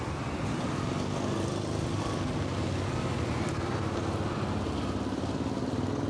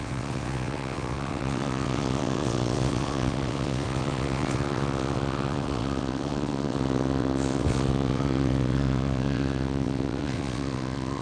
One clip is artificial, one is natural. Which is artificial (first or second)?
second